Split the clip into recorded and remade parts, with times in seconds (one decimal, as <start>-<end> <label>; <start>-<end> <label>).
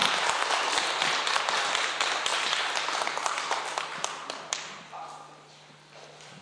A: 0.0-6.4 recorded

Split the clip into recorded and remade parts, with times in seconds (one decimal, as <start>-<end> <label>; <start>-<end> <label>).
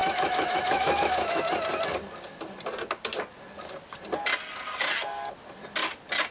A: 0.0-1.4 remade; 1.4-6.3 recorded